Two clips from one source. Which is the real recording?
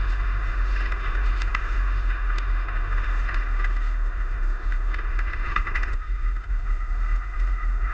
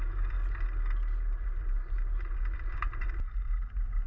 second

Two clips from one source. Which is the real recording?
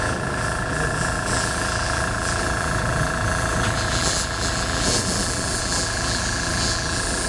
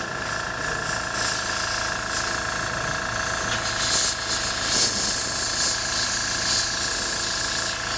second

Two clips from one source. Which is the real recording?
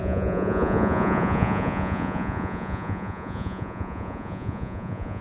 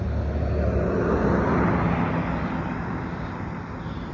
second